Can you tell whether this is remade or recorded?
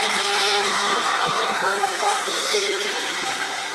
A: remade